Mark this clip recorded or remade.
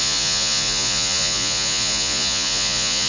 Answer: remade